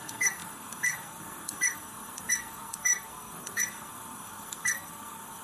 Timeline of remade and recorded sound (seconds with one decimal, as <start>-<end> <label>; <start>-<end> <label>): 0.0-5.4 remade